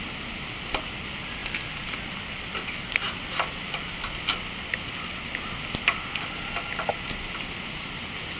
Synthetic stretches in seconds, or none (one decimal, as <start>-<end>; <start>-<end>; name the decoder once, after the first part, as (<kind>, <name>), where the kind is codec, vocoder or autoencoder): none